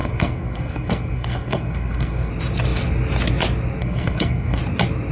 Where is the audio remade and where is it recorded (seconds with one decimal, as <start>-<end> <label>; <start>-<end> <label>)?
0.0-2.3 remade; 2.3-3.8 recorded; 3.8-4.6 remade; 4.6-5.1 recorded